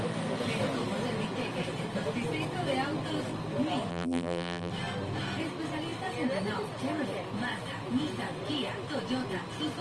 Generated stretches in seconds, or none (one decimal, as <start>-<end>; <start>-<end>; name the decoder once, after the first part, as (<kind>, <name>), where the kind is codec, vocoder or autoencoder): 3.9-4.7 (vocoder, BigVGAN v2)